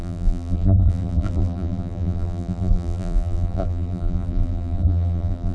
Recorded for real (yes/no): no